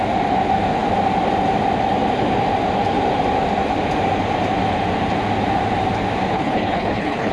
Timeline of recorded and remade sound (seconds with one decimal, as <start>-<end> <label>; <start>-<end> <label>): 0.0-6.3 recorded; 6.3-7.3 remade